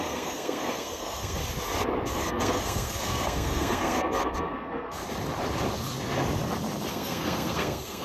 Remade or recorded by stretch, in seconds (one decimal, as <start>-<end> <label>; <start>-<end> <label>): 0.0-1.4 remade; 1.4-2.1 recorded; 2.1-5.0 remade; 5.0-6.9 recorded; 6.9-8.0 remade